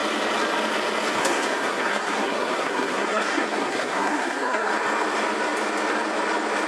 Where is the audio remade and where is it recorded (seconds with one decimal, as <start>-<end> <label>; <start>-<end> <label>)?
0.0-1.2 recorded; 1.2-4.7 remade; 4.7-6.7 recorded